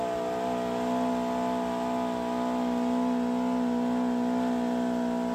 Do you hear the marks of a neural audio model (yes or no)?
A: no